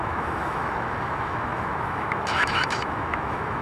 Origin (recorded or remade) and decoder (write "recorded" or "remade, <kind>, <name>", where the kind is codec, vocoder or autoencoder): remade, autoencoder, DAC-VAE